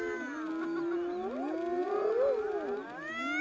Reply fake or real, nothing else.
real